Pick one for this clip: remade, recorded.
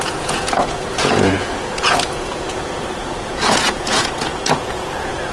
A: remade